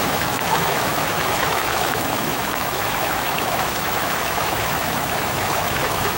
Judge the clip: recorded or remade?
remade